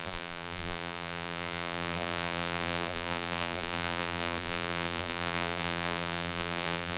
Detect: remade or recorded remade